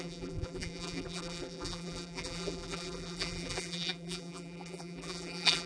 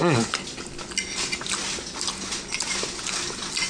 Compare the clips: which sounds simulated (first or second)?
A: first